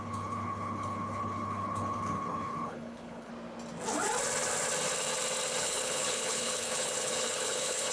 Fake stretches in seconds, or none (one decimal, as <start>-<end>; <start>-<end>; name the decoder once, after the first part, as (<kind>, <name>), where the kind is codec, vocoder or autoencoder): 0.0-3.3 (codec, HILCodec); 5.6-7.9